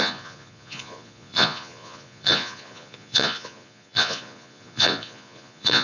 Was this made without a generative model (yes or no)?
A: no